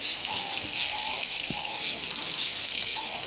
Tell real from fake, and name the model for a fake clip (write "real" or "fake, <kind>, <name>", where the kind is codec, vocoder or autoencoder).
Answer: fake, codec, SNAC